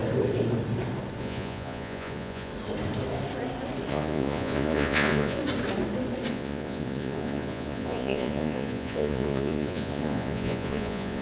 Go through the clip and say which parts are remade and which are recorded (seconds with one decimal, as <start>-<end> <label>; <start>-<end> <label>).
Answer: 0.0-1.2 recorded; 1.2-2.5 remade; 2.5-3.9 recorded; 3.9-5.4 remade; 5.4-6.3 recorded; 6.3-11.2 remade